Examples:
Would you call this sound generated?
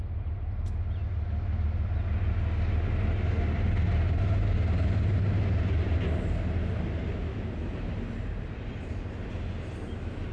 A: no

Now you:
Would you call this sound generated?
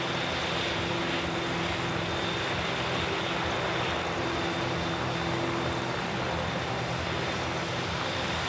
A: no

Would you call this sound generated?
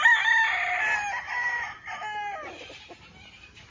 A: no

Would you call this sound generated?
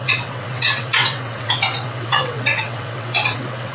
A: yes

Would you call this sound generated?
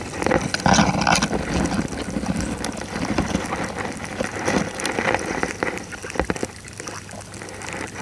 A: no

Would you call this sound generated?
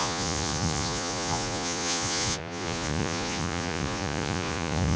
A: yes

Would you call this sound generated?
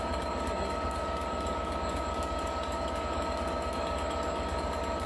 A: yes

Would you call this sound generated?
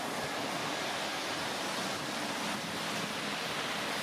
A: no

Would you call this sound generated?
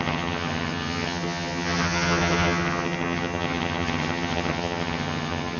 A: yes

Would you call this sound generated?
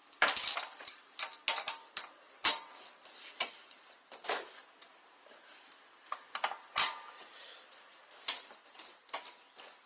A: no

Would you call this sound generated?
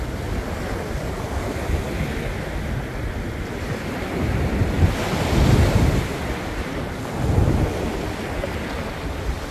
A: no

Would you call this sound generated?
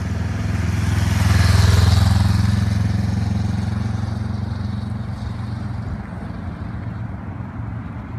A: no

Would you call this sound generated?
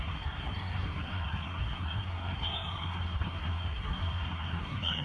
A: yes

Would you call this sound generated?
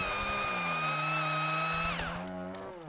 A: no